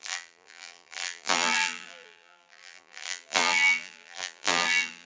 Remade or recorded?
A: remade